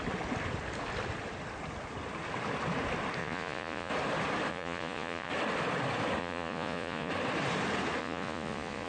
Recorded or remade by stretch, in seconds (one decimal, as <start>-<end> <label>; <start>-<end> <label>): 0.0-3.2 recorded; 3.2-3.9 remade; 3.9-4.5 recorded; 4.5-5.3 remade; 5.3-6.2 recorded; 6.2-7.1 remade; 7.1-8.0 recorded; 8.0-8.9 remade